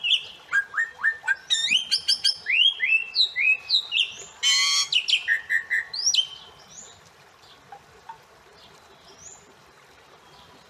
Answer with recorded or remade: recorded